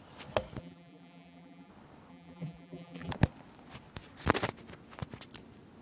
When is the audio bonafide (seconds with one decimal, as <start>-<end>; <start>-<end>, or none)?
0.0-0.6; 1.7-2.1; 3.1-5.8

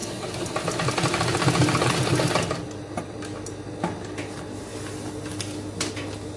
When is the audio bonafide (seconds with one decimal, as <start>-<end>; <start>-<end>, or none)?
0.0-6.4

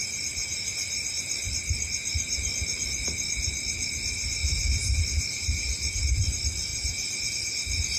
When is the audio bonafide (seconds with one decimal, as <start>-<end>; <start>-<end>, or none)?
0.0-0.4; 1.2-8.0

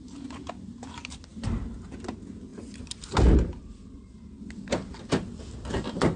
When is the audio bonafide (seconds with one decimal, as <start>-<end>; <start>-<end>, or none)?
0.0-6.2

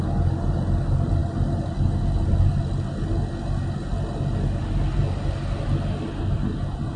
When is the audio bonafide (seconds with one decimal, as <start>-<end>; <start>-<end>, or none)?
0.0-7.0

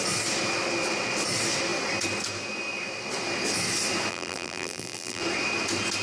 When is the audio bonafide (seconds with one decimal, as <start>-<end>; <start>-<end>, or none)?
0.0-4.1; 5.2-6.0